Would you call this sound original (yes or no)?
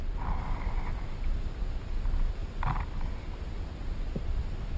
yes